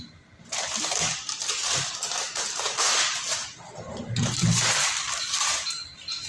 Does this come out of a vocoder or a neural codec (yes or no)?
yes